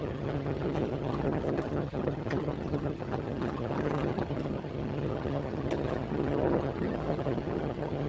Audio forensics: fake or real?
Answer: fake